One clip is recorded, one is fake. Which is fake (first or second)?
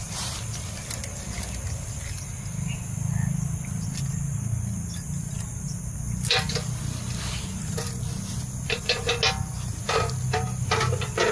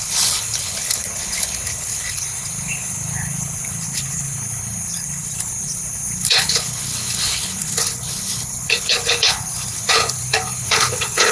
second